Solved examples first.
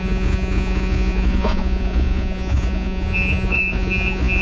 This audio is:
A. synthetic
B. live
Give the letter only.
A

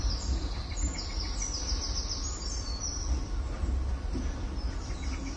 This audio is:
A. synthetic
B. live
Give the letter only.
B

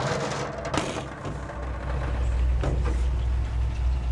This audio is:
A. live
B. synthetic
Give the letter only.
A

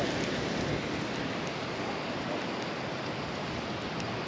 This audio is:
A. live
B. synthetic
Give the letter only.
A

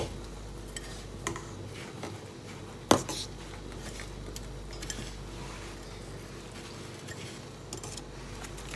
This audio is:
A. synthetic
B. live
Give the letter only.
B